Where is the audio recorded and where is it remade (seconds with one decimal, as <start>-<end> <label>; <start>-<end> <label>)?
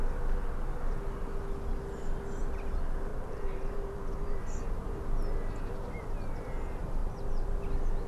0.0-3.1 recorded; 3.1-4.4 remade; 4.4-7.0 recorded; 7.0-7.6 remade; 7.6-8.1 recorded